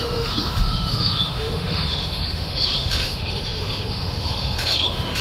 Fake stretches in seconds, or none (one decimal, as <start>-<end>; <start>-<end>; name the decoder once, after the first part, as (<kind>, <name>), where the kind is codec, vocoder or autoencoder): 0.0-5.2 (autoencoder, DAC-VAE)